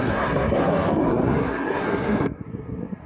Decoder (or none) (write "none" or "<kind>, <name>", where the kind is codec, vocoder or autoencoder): codec, SNAC